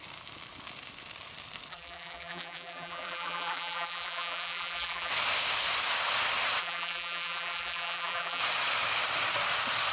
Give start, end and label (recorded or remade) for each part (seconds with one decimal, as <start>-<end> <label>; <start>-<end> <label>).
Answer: 0.0-1.7 recorded; 1.7-5.1 remade; 5.1-6.6 recorded; 6.6-8.4 remade; 8.4-9.9 recorded